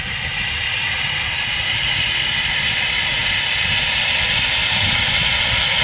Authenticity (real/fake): real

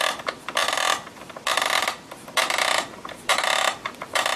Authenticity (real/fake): fake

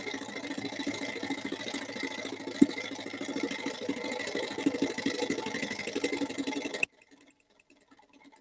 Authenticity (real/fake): real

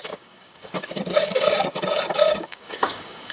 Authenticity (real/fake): fake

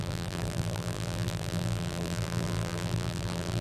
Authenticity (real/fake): fake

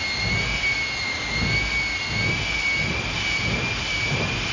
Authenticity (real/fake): real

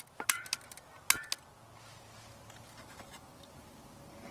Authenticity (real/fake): real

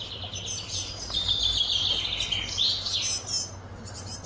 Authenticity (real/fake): real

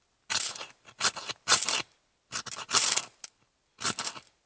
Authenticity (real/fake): real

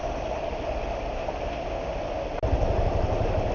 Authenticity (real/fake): real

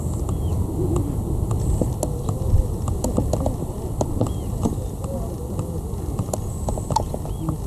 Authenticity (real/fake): real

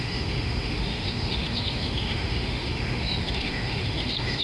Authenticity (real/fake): fake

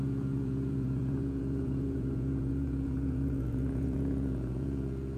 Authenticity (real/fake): fake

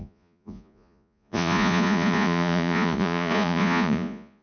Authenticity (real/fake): fake